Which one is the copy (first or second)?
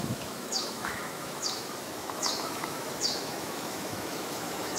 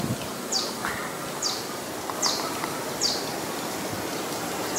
first